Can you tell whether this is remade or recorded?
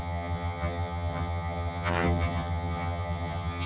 remade